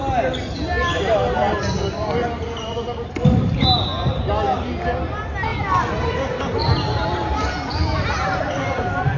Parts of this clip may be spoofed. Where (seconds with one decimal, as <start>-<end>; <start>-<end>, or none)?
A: none